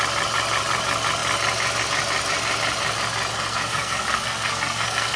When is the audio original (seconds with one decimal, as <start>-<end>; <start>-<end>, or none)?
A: 0.0-3.3